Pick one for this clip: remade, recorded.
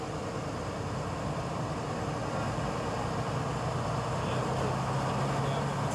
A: recorded